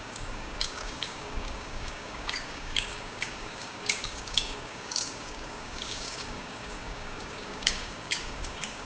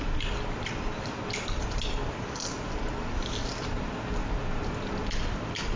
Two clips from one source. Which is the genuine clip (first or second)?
second